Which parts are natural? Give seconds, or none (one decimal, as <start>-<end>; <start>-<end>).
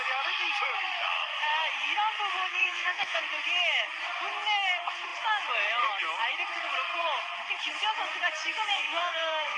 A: 0.0-2.5; 3.2-8.7